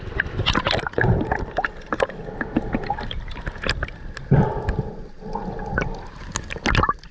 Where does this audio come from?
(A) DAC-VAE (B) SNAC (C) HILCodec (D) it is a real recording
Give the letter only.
D